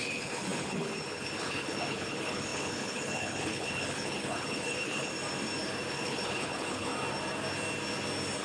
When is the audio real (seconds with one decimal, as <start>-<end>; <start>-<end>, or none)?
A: 5.1-5.9; 6.9-8.4